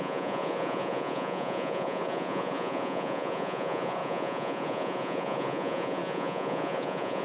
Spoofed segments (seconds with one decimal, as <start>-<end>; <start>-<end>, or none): 0.0-7.2